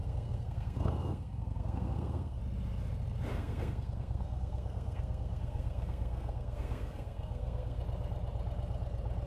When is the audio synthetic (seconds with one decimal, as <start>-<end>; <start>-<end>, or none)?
0.0-2.4; 3.3-7.8

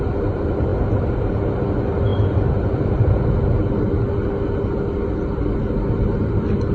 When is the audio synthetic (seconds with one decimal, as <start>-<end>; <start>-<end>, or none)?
none

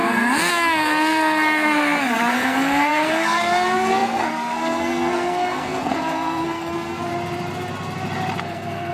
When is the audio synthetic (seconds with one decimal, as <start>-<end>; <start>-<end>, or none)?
0.0-7.1; 8.4-8.9

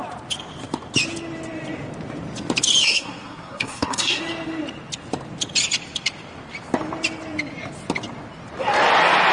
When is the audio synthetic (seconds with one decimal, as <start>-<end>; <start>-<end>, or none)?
2.8-4.2

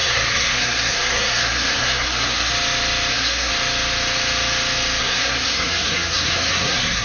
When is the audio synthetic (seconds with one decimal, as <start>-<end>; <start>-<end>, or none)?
0.0-2.5; 3.1-3.5; 5.0-7.0